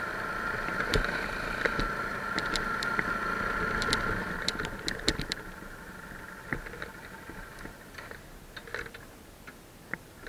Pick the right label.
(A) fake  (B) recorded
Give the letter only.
B